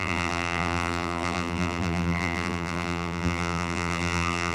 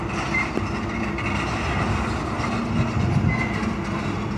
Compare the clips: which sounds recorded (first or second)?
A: second